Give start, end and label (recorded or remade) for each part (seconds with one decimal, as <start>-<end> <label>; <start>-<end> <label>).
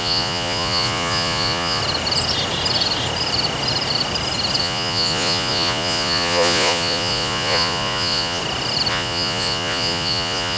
0.0-1.8 remade; 1.8-4.6 recorded; 4.6-8.4 remade; 8.4-8.9 recorded; 8.9-10.6 remade